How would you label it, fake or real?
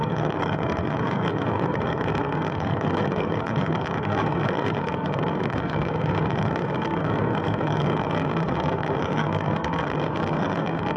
fake